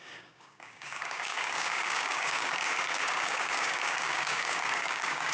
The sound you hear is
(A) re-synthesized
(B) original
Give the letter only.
A